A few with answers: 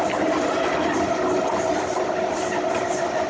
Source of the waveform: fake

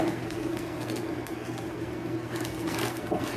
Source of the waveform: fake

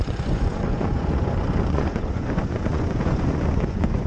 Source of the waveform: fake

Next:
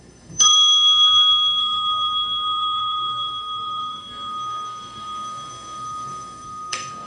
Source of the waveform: fake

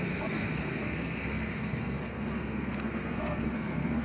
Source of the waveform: fake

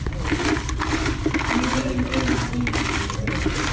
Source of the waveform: real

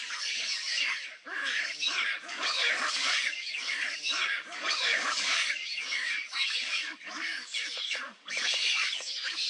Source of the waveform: fake